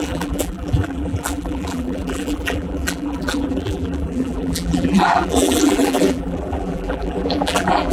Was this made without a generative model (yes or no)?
no